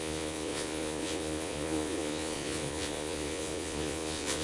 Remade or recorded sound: remade